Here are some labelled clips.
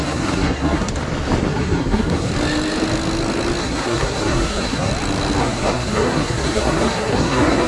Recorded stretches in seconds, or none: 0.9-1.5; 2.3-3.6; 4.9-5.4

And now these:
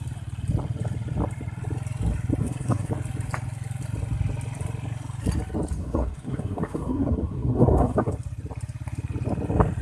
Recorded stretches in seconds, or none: 0.0-2.4; 2.9-5.8; 8.1-9.8

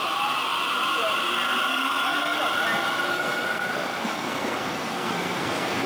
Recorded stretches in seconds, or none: 0.0-1.7; 2.4-3.1

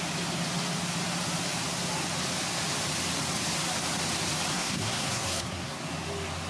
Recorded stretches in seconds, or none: 0.0-4.5; 5.8-6.5

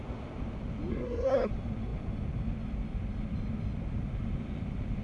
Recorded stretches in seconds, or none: 0.0-0.9; 1.5-5.0

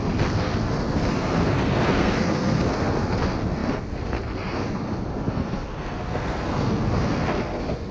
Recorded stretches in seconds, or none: none

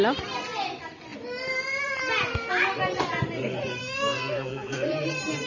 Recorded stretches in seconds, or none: 0.0-3.8; 4.9-5.5